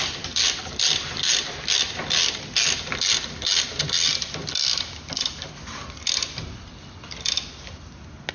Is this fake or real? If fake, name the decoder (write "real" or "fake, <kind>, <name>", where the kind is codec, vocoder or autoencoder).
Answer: real